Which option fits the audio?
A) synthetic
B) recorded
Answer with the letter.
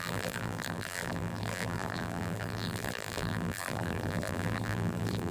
A